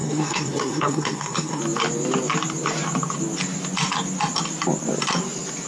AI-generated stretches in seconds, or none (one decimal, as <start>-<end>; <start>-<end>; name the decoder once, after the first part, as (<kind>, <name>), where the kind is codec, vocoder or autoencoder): 0.0-1.6 (codec, SNAC)

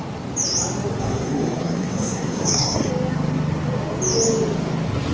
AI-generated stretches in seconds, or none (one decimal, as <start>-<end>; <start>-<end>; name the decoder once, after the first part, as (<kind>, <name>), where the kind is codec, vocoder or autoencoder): 1.0-2.9 (codec, SNAC)

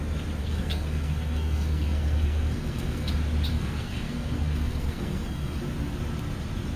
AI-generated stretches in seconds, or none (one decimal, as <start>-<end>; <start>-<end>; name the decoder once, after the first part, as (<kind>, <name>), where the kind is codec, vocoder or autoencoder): 0.4-3.1 (codec, SNAC); 3.5-5.6

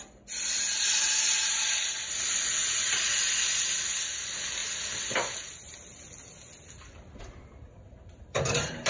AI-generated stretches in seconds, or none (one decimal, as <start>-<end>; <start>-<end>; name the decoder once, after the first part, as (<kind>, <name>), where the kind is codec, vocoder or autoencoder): none